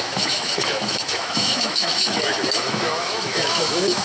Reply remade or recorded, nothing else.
remade